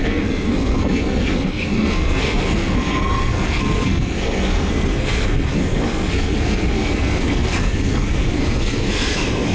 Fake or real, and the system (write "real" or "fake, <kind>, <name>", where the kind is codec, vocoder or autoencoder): fake, codec, SNAC